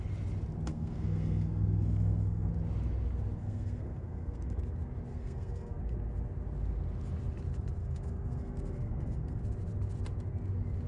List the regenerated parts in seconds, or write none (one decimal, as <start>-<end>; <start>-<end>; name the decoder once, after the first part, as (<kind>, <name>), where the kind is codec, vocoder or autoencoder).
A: 0.7-2.5 (codec, SNAC); 3.4-4.6; 5.1-5.8; 7.8-9.4